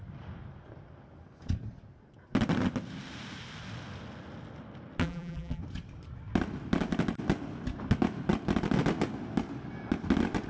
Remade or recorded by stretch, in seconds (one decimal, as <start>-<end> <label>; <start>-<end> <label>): 0.0-5.0 recorded; 5.0-5.6 remade; 5.6-10.5 recorded